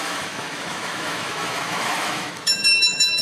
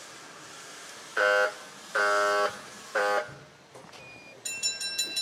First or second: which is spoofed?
first